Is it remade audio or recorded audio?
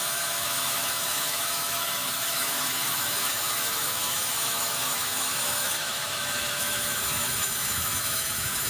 remade